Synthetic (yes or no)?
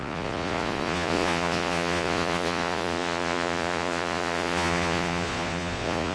yes